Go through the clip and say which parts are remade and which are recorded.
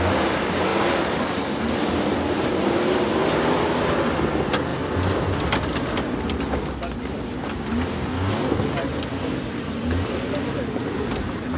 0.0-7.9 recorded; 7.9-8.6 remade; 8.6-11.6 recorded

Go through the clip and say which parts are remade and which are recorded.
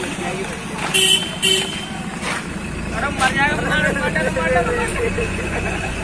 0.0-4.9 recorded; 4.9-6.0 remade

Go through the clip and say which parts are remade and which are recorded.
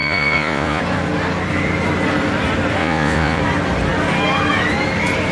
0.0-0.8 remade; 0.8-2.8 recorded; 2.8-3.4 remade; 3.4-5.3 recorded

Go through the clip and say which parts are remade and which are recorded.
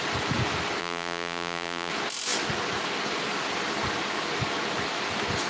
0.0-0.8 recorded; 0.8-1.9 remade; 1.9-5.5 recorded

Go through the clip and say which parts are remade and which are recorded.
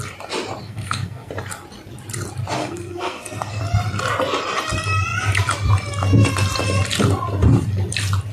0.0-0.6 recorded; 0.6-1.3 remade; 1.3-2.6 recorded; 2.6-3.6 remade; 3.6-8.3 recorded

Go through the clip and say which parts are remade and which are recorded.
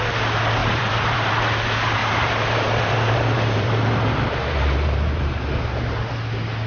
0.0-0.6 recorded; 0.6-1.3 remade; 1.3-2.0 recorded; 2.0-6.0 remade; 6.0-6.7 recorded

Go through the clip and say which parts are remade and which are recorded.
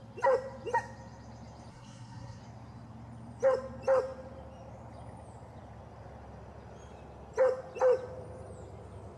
0.0-1.7 recorded; 1.7-2.4 remade; 2.4-9.2 recorded